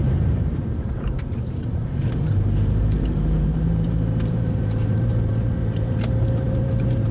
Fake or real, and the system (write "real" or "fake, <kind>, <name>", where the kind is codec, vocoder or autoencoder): fake, vocoder, BigVGAN v2